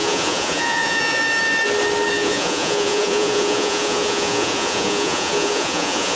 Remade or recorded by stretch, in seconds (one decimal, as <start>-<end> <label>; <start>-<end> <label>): 0.0-1.2 remade; 1.2-2.1 recorded; 2.1-6.2 remade